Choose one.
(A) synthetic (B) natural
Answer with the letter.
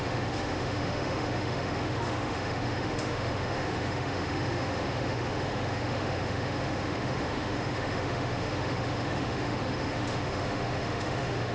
A